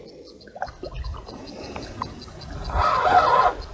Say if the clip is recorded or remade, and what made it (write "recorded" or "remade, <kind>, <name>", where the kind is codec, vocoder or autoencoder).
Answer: recorded